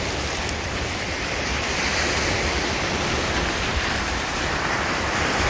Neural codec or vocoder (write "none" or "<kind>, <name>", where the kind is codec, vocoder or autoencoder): vocoder, BigVGAN v2